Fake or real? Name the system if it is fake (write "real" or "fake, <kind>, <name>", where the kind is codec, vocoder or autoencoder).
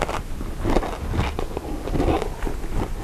real